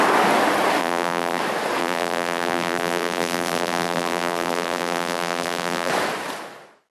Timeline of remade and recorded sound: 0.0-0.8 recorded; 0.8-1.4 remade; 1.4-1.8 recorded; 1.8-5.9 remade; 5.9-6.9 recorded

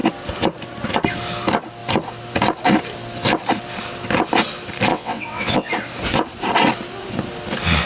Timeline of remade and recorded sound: 0.0-4.9 recorded; 4.9-5.7 remade; 5.7-7.9 recorded

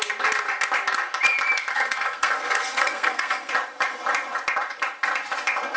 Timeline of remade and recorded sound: 0.0-1.7 recorded; 1.7-3.5 remade; 3.5-5.8 recorded